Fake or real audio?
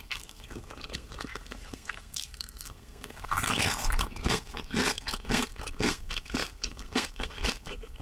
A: fake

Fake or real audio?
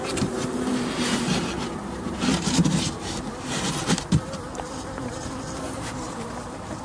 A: fake